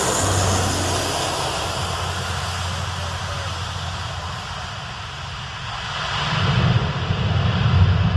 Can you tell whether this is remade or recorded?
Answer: recorded